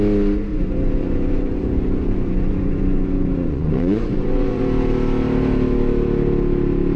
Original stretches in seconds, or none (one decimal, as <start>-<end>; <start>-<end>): 0.0-0.5; 4.6-7.0